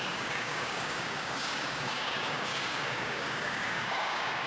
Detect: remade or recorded remade